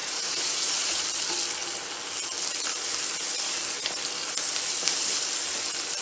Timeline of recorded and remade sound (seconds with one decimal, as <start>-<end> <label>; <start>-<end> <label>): 0.0-1.0 remade; 1.0-6.0 recorded